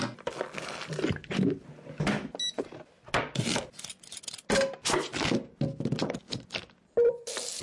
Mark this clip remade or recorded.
recorded